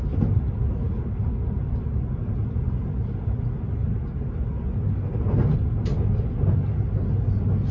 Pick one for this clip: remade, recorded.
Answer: recorded